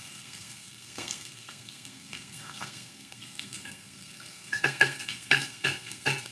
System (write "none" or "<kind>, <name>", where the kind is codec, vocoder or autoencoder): codec, SNAC